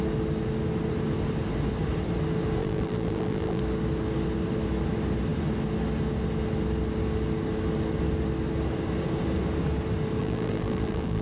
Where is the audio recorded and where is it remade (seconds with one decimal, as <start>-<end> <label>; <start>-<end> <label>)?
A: 0.0-2.6 recorded; 2.6-3.6 remade; 3.6-10.2 recorded; 10.2-11.2 remade